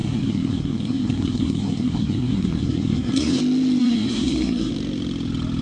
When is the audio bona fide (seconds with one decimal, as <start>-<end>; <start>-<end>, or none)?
3.4-3.8; 4.7-5.6